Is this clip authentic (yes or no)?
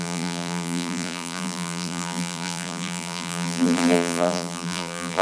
no